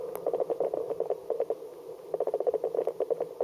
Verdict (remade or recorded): recorded